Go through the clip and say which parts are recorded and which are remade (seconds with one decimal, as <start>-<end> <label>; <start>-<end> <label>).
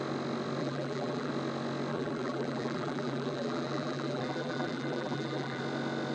0.0-0.6 recorded; 0.6-1.3 remade; 1.3-1.9 recorded; 1.9-5.6 remade; 5.6-6.1 recorded